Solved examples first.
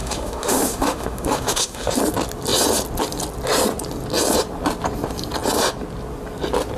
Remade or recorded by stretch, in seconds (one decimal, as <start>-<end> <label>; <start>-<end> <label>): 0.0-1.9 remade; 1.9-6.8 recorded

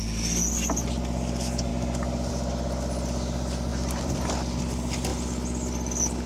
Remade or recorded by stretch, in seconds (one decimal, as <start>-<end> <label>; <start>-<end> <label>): 0.0-3.7 recorded; 3.7-4.3 remade; 4.3-6.3 recorded

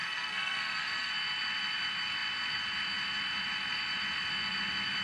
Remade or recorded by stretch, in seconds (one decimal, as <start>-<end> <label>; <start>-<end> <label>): 0.0-1.1 remade; 1.1-5.0 recorded

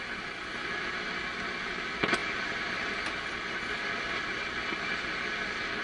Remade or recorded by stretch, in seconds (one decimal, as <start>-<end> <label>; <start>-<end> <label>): 0.0-5.8 recorded

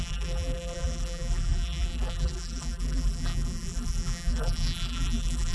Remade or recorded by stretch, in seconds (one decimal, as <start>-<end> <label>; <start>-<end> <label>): 0.0-5.5 remade

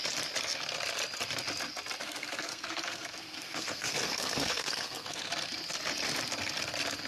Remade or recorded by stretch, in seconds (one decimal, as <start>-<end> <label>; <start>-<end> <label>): 0.0-2.0 recorded; 2.0-5.3 remade; 5.3-7.1 recorded

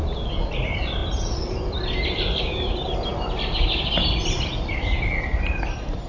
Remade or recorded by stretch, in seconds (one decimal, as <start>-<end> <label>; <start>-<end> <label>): 0.0-3.1 remade; 3.1-4.0 recorded; 4.0-6.1 remade

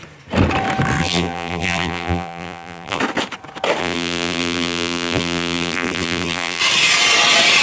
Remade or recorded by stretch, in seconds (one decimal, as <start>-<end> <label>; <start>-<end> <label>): 0.0-1.0 recorded; 1.0-3.0 remade; 3.0-3.8 recorded; 3.8-6.6 remade; 6.6-7.6 recorded